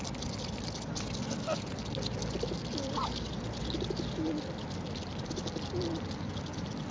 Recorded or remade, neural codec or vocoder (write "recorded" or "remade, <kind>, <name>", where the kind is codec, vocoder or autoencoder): remade, vocoder, BigVGAN v2